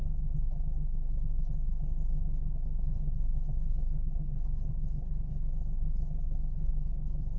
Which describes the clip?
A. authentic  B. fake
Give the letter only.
B